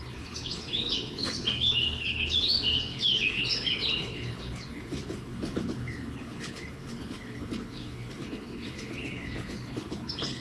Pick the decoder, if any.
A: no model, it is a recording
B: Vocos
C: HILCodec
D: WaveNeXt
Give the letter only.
C